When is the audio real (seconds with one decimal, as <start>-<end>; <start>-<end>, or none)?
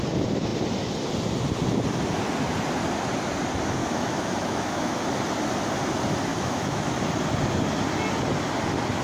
0.0-3.8; 5.0-6.3; 6.9-9.0